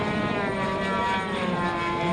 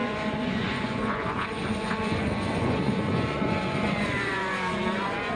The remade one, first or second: second